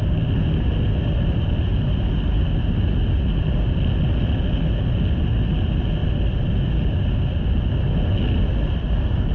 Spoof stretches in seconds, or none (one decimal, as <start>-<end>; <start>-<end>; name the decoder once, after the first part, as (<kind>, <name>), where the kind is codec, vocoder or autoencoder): none